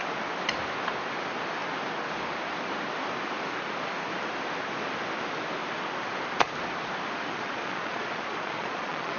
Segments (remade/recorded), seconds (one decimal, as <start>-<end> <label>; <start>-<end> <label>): 0.0-7.3 recorded; 7.3-9.2 remade